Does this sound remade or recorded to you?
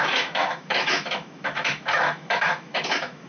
remade